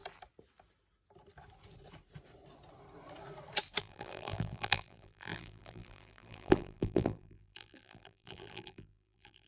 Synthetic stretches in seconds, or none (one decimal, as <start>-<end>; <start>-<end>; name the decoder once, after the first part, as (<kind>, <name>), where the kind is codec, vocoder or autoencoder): 3.8-9.5 (vocoder, BigVGAN v2)